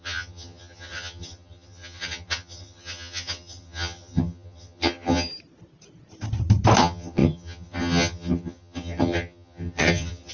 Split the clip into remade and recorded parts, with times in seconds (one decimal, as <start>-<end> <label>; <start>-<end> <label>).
0.0-5.3 remade; 5.3-6.8 recorded; 6.8-10.3 remade